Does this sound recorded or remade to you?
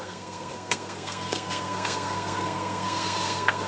remade